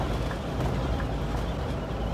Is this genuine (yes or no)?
yes